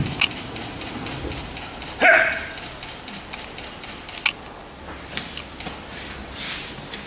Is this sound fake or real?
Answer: real